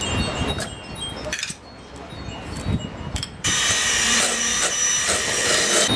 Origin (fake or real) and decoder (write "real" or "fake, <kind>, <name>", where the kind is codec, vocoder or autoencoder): fake, vocoder, BigVGAN v2